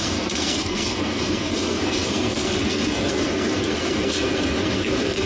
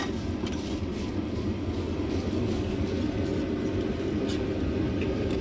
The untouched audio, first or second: second